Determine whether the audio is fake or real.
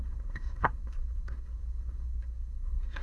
fake